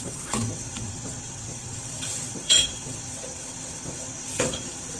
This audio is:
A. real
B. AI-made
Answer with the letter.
B